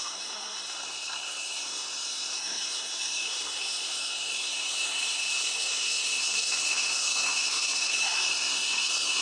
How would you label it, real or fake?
fake